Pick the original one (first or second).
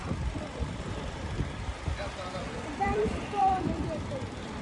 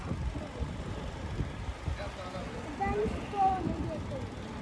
second